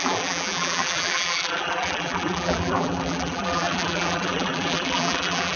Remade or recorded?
remade